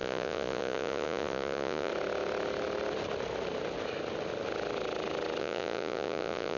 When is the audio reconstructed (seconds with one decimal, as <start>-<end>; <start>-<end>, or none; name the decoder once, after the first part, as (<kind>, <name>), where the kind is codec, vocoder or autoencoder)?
0.0-1.9 (vocoder, Vocos); 5.4-6.6